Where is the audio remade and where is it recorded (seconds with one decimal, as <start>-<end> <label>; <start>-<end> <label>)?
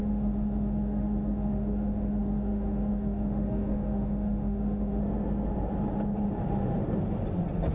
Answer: 0.0-5.0 remade; 5.0-7.7 recorded